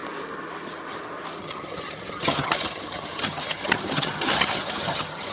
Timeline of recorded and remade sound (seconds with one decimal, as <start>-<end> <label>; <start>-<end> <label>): 0.0-1.4 recorded; 1.4-5.3 remade